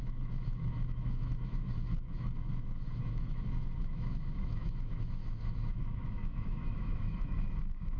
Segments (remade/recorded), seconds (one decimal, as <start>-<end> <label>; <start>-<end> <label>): 0.0-8.0 remade